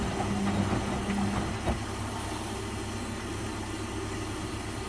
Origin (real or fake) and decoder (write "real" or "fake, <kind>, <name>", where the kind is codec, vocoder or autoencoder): real